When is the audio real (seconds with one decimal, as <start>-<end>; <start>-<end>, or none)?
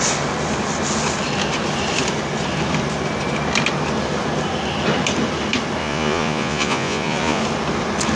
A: 0.0-5.8; 7.4-8.2